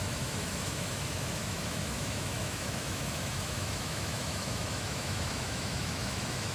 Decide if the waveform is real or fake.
fake